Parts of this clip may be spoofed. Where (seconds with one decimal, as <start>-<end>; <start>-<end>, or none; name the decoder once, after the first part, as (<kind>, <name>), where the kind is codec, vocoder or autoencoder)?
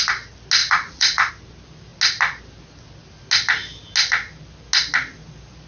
0.6-1.3 (vocoder, Vocos)